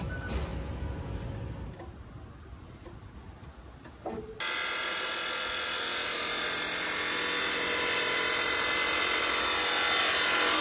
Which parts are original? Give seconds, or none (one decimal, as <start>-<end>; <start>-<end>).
0.0-10.6

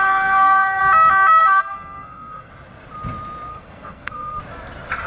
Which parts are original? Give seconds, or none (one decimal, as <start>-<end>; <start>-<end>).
0.8-1.4; 2.5-3.5; 4.4-5.1

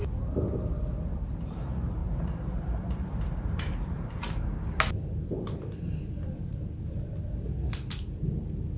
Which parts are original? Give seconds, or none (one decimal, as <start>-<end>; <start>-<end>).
0.0-2.0; 4.3-8.8

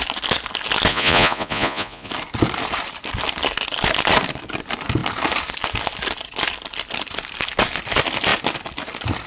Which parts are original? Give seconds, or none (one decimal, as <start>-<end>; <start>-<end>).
0.0-0.9; 2.1-9.3

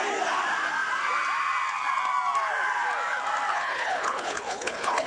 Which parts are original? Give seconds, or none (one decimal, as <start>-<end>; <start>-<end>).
0.0-3.5

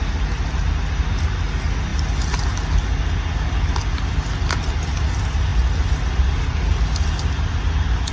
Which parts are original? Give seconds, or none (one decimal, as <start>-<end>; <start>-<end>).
0.0-8.1

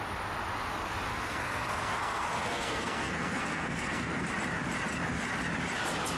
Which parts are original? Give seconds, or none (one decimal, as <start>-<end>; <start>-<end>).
0.0-1.1; 4.3-6.2

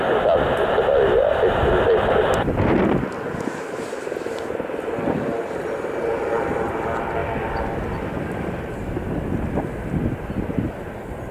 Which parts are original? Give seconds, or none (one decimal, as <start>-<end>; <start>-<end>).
0.0-11.3